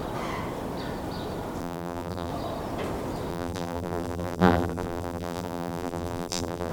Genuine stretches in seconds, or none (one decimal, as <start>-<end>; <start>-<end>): 0.0-1.6; 2.3-3.3